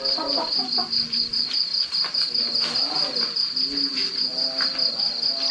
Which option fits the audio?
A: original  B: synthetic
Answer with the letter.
A